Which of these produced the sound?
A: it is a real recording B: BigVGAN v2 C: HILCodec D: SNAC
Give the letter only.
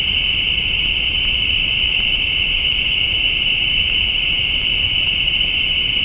B